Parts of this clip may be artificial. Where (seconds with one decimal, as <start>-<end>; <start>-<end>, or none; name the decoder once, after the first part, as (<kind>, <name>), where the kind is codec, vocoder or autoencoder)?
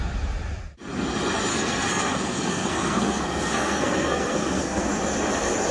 1.5-4.9 (codec, SNAC)